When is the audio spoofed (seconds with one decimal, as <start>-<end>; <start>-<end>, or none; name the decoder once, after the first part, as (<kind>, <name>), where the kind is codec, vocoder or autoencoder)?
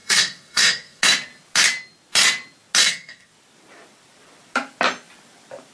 0.0-1.0 (codec, SNAC); 2.8-3.3